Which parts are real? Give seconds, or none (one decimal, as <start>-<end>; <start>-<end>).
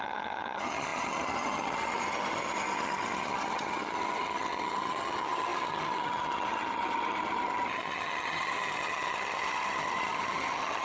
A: none